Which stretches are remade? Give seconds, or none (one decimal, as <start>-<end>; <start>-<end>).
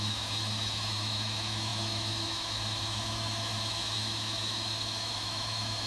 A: 0.0-5.9